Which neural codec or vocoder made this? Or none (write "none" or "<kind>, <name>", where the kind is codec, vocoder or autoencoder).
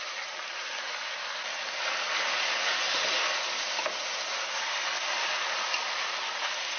none